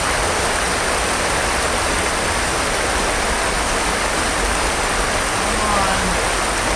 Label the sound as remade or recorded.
recorded